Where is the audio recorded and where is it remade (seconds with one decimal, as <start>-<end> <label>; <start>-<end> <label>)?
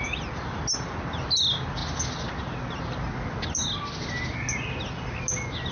0.0-5.7 recorded